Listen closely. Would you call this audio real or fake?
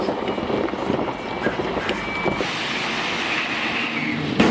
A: real